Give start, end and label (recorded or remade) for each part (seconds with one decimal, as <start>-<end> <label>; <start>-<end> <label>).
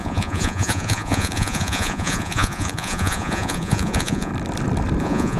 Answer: 0.0-4.3 remade; 4.3-5.0 recorded; 5.0-5.4 remade